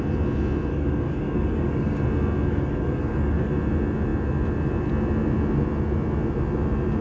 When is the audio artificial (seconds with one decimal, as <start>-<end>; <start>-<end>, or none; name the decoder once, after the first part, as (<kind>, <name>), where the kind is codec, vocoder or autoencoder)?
0.7-2.0 (codec, DAC); 2.5-3.5